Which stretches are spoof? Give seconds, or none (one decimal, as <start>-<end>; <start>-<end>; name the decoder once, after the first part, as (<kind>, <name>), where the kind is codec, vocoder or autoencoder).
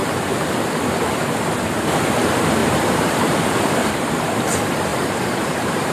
2.6-4.5 (vocoder, BigVGAN v2); 4.9-5.9